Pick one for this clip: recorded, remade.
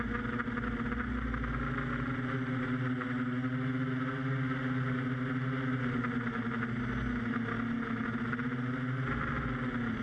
recorded